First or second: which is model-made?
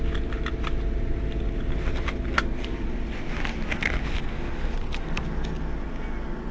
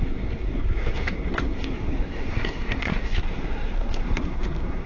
second